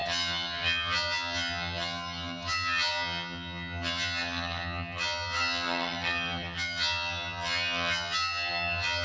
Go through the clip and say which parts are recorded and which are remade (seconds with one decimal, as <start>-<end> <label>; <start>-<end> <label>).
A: 0.0-9.0 remade